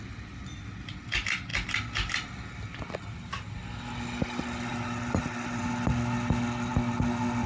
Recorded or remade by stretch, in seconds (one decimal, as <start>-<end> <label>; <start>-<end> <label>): 0.0-7.5 recorded